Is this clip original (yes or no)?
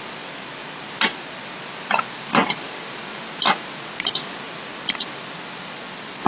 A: yes